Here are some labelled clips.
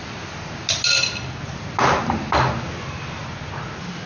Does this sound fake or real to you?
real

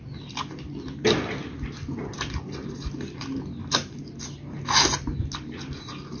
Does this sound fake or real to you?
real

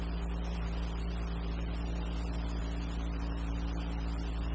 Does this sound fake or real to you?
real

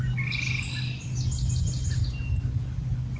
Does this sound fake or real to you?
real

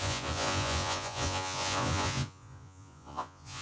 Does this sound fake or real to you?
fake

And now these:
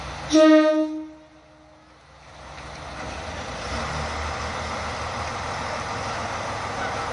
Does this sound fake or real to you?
real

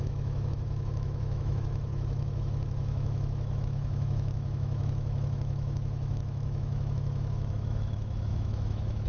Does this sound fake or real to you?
fake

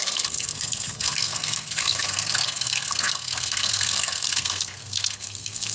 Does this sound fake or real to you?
fake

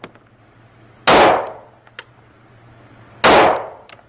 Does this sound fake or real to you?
real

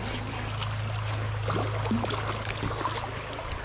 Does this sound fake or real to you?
real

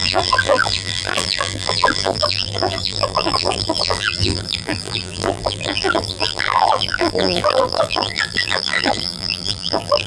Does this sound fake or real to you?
fake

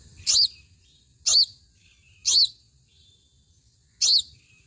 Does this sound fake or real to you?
real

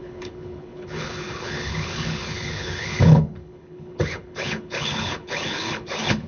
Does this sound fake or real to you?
fake